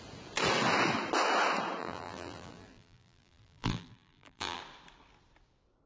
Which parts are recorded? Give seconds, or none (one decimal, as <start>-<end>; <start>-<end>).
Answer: 0.0-1.8; 4.6-5.9